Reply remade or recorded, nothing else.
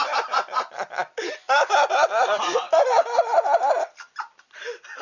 recorded